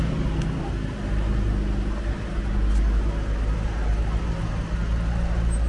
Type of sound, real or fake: real